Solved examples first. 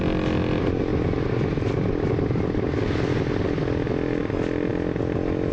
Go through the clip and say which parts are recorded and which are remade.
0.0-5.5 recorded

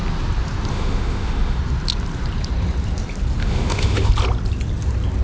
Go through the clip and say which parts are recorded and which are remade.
0.0-0.7 recorded; 0.7-1.6 remade; 1.6-3.4 recorded; 3.4-4.1 remade; 4.1-5.2 recorded

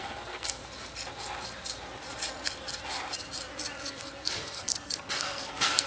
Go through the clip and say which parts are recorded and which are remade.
0.0-0.6 remade; 0.6-3.9 recorded; 3.9-5.9 remade

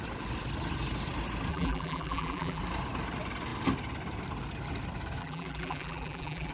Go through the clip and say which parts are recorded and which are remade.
0.0-1.5 recorded; 1.5-2.6 remade; 2.6-5.2 recorded; 5.2-6.5 remade

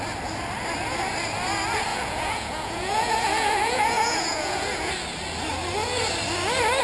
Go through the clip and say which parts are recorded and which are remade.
0.0-1.9 recorded; 1.9-4.9 remade; 4.9-6.8 recorded